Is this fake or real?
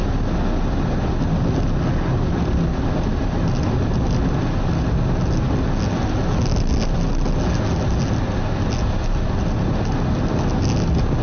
real